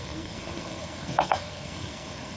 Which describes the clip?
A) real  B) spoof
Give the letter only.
B